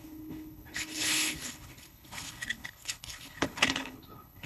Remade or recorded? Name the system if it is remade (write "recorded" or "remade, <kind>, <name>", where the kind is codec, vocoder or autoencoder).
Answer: remade, codec, HILCodec